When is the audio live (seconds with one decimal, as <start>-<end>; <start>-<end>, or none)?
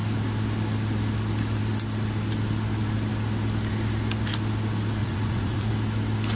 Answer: 0.0-5.0; 5.7-6.4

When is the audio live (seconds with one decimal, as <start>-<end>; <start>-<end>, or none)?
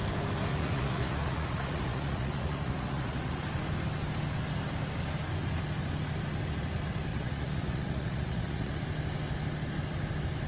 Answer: 0.0-0.5; 3.4-7.1; 8.7-10.5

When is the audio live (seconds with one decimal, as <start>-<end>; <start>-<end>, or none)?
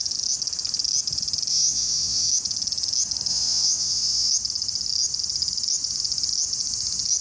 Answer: 0.0-1.5; 2.3-3.3; 4.3-7.2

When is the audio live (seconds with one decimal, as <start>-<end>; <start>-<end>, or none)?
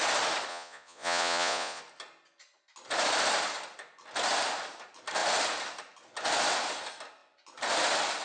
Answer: 0.0-0.5; 1.8-8.2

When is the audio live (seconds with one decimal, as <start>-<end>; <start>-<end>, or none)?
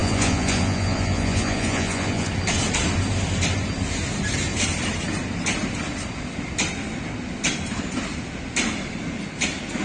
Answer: 2.3-9.8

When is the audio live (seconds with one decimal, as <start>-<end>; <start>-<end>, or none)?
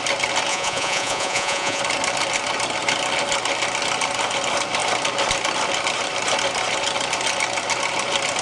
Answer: 0.0-0.5; 1.8-8.4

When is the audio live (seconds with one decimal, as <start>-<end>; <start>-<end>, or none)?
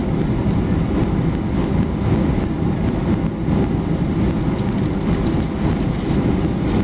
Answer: 0.0-6.8